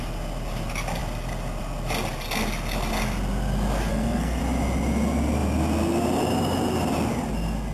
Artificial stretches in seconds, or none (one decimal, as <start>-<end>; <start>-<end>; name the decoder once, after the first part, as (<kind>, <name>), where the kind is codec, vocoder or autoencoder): 3.9-4.4 (codec, SNAC)